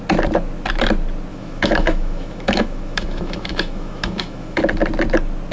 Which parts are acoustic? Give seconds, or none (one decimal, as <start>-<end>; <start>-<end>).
0.0-1.3; 4.6-5.5